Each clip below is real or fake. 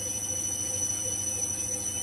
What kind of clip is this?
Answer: fake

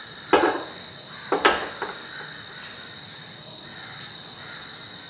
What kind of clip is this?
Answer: fake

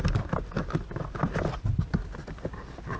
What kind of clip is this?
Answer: real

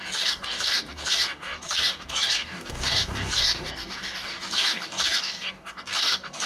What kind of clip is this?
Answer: fake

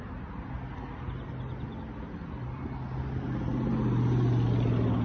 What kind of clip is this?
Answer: real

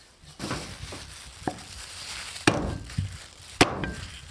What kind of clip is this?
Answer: real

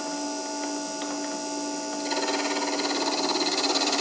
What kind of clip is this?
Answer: real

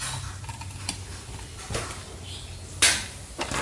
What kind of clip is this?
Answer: real